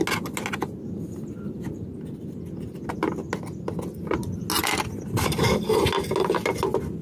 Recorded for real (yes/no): yes